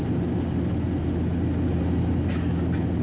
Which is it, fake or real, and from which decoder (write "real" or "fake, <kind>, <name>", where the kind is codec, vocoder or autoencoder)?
real